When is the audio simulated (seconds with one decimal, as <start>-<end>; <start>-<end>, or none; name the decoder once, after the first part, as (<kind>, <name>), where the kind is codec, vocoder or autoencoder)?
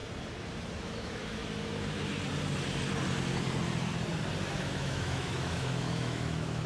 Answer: 0.8-1.4 (autoencoder, DAC-VAE); 4.6-6.7